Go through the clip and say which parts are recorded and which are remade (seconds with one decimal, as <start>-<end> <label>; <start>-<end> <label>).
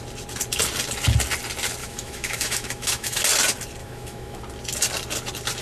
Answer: 0.0-1.8 recorded; 1.8-3.2 remade; 3.2-3.8 recorded; 3.8-4.4 remade; 4.4-5.6 recorded